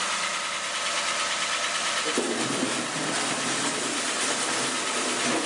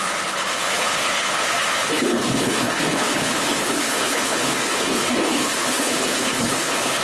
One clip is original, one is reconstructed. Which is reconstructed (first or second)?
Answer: second